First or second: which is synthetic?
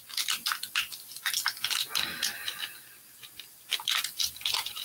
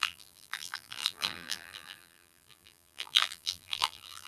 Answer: second